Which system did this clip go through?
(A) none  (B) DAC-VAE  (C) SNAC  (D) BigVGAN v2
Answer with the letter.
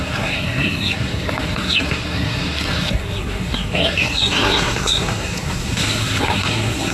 C